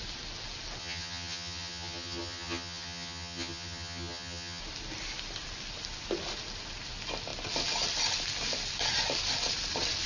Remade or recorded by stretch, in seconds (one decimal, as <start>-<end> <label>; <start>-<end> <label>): 0.0-0.8 recorded; 0.8-4.6 remade; 4.6-10.1 recorded